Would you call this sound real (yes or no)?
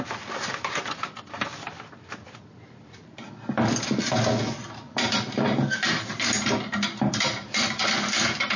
yes